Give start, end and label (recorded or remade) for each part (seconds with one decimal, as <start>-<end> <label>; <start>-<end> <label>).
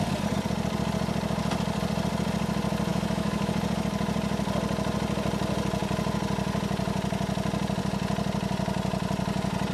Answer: 0.0-2.9 recorded; 2.9-3.5 remade; 3.5-9.7 recorded